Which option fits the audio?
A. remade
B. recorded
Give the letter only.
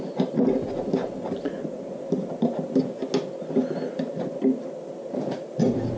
B